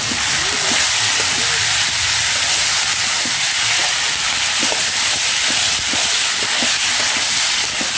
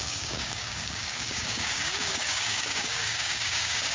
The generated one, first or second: second